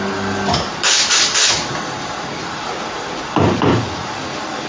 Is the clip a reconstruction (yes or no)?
no